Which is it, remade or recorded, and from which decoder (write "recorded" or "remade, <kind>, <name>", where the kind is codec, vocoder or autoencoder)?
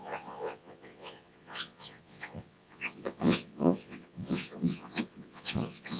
remade, vocoder, Vocos